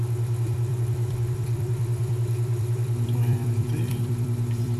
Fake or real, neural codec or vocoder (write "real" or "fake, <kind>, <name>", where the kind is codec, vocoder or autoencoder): fake, vocoder, BigVGAN v2